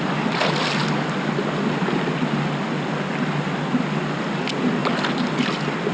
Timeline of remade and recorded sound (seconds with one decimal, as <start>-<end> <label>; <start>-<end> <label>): 0.0-5.9 recorded